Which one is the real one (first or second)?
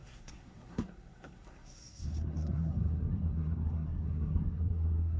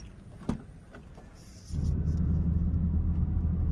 second